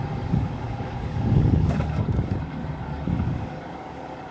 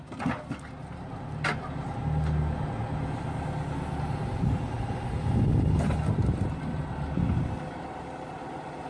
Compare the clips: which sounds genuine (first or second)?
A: second